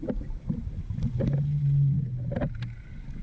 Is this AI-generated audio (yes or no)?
no